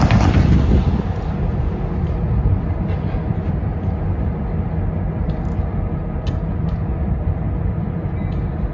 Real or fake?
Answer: real